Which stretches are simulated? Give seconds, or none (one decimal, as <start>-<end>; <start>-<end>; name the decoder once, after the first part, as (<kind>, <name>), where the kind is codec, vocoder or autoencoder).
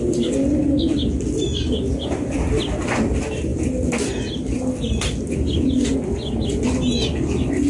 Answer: none